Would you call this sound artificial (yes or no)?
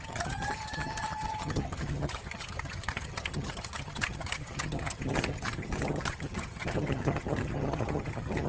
yes